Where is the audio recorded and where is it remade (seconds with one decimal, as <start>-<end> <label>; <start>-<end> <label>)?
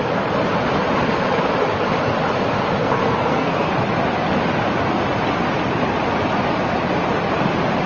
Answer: 0.0-2.8 recorded; 2.8-3.7 remade; 3.7-7.9 recorded